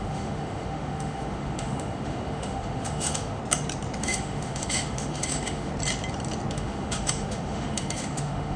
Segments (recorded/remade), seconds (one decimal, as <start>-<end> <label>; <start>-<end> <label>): 0.0-3.4 remade; 3.4-4.0 recorded; 4.0-5.7 remade; 5.7-6.5 recorded; 6.5-8.6 remade